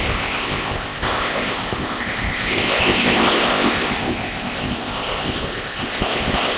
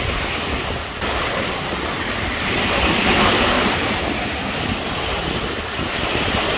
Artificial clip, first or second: first